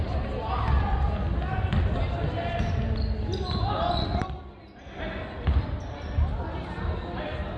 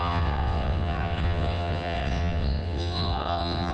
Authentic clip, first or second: first